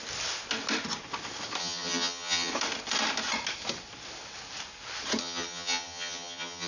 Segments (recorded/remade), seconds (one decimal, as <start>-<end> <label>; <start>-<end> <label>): 0.0-1.6 recorded; 1.6-2.5 remade; 2.5-5.2 recorded; 5.2-6.7 remade